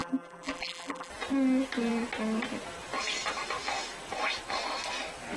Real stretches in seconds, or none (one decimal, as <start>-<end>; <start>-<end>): 1.1-5.4